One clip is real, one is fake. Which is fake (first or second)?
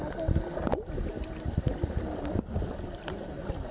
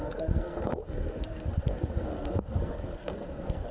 second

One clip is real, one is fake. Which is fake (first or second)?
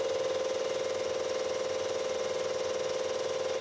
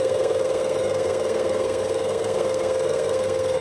second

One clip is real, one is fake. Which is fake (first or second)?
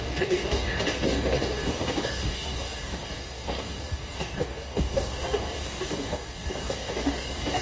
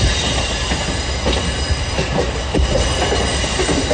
first